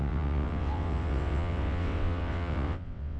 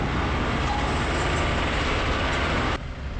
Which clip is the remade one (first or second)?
first